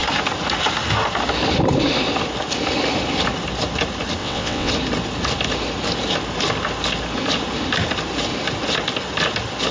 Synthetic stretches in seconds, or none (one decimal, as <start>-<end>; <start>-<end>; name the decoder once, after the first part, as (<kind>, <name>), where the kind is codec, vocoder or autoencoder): 4.2-4.7 (vocoder, WaveNeXt)